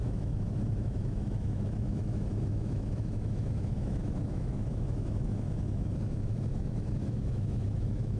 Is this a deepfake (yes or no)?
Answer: yes